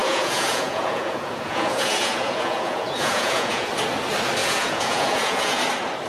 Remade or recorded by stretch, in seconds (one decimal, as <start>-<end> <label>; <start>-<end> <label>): 0.0-3.7 remade; 3.7-4.4 recorded; 4.4-5.6 remade; 5.6-6.1 recorded